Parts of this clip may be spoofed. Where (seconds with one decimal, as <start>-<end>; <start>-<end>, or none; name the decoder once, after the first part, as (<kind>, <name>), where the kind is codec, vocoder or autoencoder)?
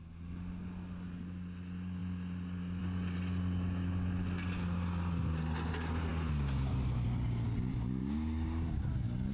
8.0-8.7 (codec, DAC)